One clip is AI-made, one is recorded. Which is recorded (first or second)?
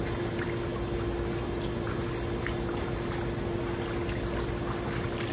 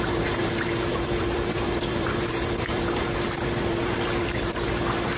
first